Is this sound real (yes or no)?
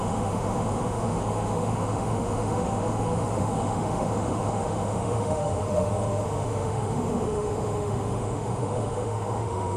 no